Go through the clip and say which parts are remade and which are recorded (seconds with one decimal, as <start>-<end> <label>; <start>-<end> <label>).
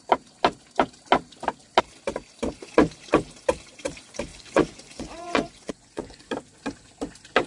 0.0-4.3 recorded; 4.3-6.3 remade; 6.3-7.5 recorded